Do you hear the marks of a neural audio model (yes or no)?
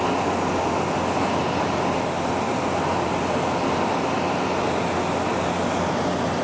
no